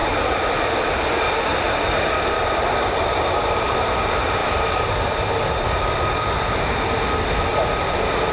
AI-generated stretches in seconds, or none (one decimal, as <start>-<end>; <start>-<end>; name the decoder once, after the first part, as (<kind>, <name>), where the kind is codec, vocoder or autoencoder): none